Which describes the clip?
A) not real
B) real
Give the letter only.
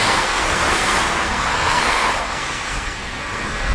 A